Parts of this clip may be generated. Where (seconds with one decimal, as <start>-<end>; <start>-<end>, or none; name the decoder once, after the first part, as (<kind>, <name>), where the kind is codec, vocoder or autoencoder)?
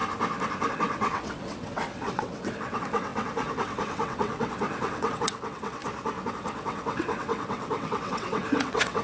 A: 0.7-5.8 (vocoder, WaveNeXt); 6.3-9.0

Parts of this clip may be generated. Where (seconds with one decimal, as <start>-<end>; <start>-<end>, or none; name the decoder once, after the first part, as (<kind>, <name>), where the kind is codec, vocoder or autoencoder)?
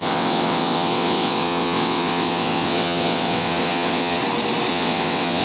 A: 0.0-4.2 (vocoder, WaveNeXt); 4.7-5.4